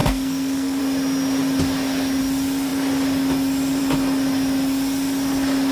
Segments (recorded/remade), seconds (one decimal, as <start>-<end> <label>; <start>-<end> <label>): 0.0-0.8 remade; 0.8-5.7 recorded